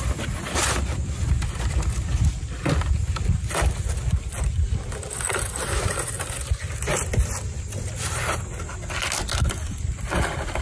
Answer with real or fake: real